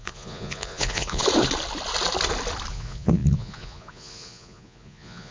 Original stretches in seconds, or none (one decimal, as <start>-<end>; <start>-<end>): 1.2-2.7

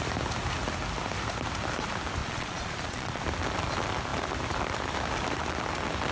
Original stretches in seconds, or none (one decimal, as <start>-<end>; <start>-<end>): 0.0-2.2; 3.2-6.1

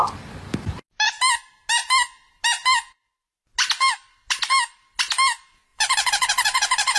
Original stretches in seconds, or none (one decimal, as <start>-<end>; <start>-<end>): 0.0-5.7

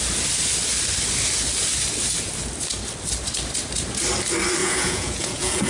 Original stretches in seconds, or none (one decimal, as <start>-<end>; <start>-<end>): 0.0-4.6

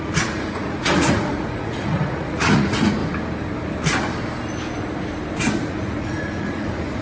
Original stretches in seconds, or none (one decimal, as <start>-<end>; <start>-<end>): 3.0-5.7

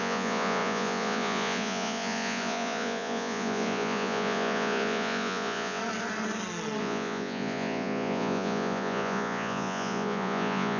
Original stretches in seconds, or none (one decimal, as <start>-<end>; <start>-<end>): 5.8-6.8